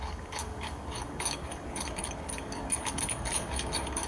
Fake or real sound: fake